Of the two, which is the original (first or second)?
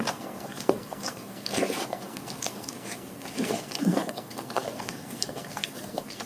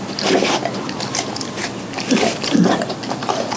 second